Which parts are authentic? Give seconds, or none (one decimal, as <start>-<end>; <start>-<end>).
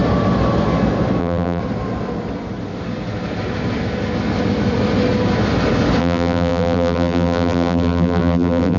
0.0-1.2; 1.6-6.0